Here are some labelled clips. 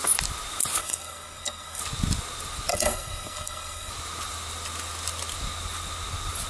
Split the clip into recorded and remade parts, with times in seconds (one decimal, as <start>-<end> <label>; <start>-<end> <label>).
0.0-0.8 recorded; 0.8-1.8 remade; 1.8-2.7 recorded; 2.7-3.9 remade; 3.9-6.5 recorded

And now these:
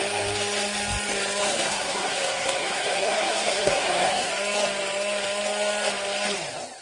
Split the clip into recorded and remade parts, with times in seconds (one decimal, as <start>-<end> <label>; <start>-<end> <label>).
0.0-1.4 recorded; 1.4-4.3 remade; 4.3-6.8 recorded

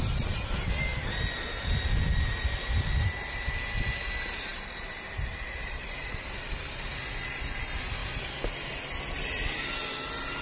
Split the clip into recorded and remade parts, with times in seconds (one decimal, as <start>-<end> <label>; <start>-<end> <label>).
0.0-10.4 recorded

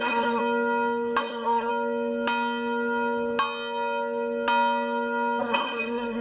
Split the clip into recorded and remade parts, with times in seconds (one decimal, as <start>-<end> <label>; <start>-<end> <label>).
0.0-0.4 remade; 0.4-1.2 recorded; 1.2-1.7 remade; 1.7-5.4 recorded; 5.4-6.2 remade

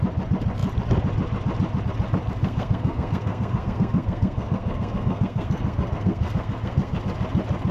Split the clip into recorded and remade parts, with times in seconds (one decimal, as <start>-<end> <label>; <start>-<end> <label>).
0.0-2.4 recorded; 2.4-7.0 remade; 7.0-7.7 recorded

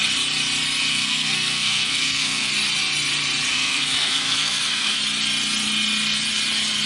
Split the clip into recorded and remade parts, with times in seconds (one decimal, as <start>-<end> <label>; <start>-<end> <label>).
0.0-0.9 recorded; 0.9-2.5 remade; 2.5-3.5 recorded; 3.5-5.0 remade; 5.0-6.9 recorded

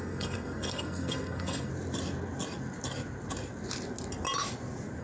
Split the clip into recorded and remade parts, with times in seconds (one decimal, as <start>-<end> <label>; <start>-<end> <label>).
0.0-1.7 remade; 1.7-5.0 recorded

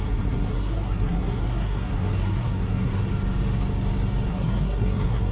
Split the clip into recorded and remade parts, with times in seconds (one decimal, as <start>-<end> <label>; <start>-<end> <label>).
0.0-3.0 remade; 3.0-4.3 recorded; 4.3-5.3 remade